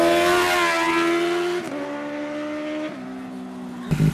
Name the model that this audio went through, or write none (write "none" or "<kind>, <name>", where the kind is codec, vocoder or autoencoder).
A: none